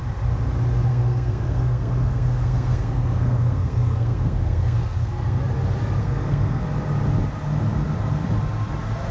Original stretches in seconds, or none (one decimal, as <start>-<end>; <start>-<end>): 0.0-0.9; 5.4-6.0; 6.6-9.1